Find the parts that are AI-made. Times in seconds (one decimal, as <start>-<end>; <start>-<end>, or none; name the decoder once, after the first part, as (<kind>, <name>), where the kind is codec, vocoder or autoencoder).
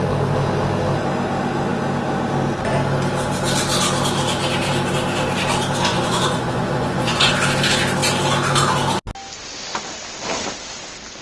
5.9-7.3 (vocoder, Vocos)